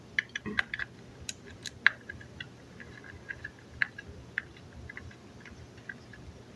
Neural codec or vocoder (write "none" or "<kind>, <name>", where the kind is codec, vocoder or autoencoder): none